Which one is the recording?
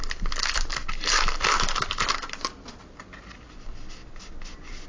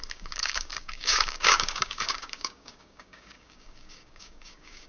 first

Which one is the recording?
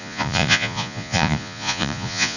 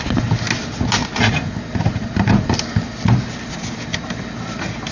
second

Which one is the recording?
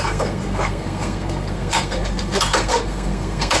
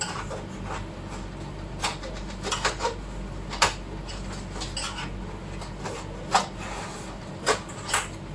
second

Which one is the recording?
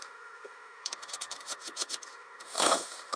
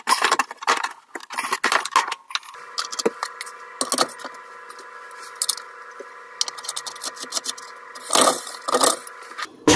second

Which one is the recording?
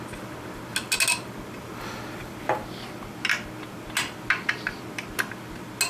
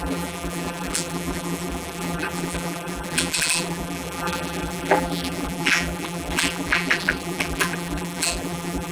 first